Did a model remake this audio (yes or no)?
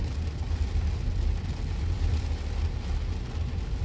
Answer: no